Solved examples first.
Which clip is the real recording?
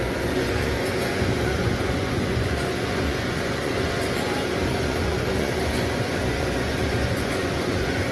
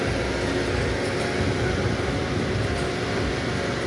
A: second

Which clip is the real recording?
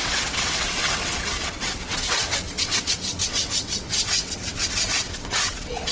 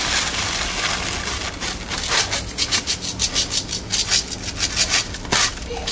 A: second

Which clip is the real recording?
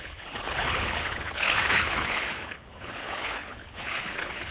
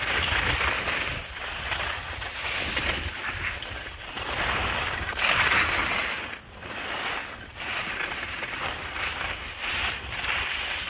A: second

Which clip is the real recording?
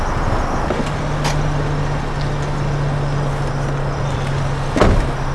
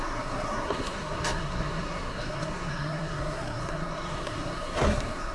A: first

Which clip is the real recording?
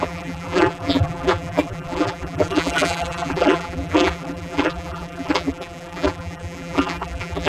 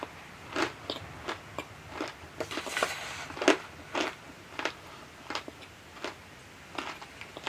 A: second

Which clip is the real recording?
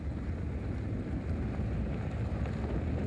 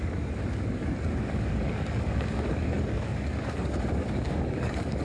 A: first